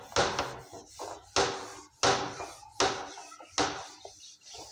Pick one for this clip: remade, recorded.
recorded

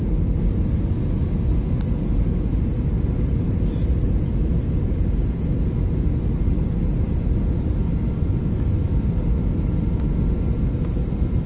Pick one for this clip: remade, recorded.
recorded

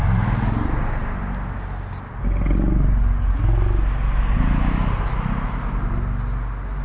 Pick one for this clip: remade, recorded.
recorded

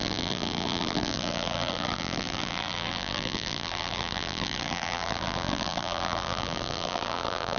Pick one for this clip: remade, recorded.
remade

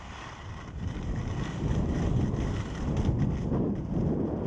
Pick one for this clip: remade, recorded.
recorded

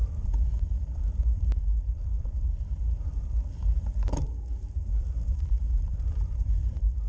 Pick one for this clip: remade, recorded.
remade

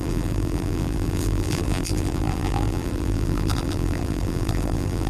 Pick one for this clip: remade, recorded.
remade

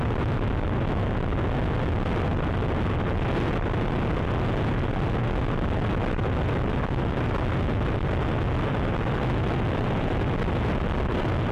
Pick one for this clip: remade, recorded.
recorded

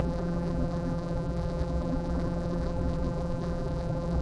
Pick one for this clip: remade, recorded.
remade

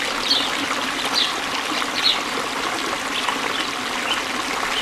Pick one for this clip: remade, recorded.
recorded